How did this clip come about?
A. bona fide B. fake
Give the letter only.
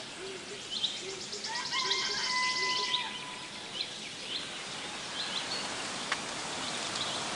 A